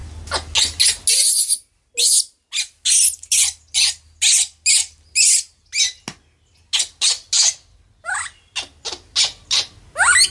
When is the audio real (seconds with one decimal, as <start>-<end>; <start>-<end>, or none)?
0.0-10.3